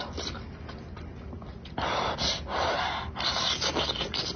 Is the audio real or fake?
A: real